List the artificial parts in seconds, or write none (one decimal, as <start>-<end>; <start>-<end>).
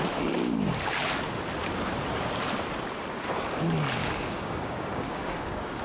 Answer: 4.0-5.8